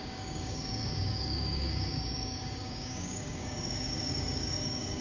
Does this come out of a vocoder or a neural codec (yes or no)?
yes